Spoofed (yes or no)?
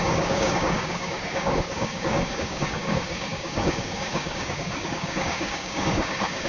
yes